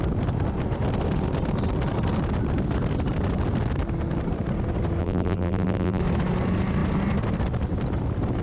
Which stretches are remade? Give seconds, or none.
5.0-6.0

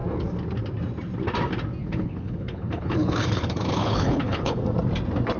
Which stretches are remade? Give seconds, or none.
1.8-4.6

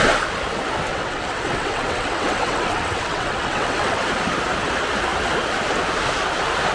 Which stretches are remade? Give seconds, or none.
0.9-4.0

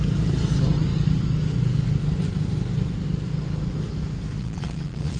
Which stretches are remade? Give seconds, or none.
4.4-5.2

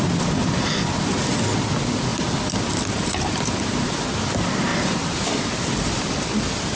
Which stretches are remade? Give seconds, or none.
0.4-0.9; 2.1-4.0; 4.7-6.2

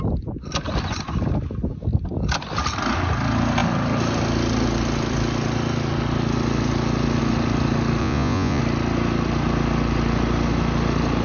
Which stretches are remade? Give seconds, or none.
8.0-8.6

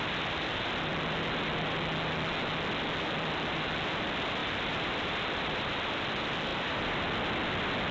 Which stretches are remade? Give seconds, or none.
4.4-6.0; 6.5-7.4